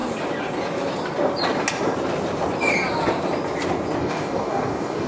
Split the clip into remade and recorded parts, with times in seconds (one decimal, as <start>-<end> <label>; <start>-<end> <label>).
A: 0.0-4.0 recorded; 4.0-5.1 remade